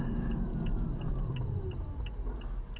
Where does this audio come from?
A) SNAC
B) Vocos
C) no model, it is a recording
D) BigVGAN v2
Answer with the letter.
C